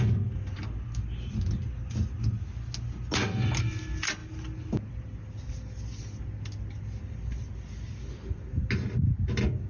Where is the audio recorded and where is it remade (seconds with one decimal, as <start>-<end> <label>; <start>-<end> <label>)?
0.0-9.7 recorded